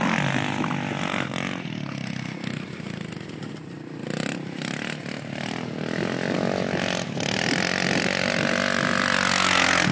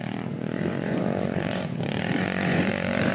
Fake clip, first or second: second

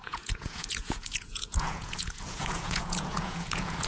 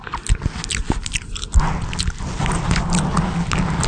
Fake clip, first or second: first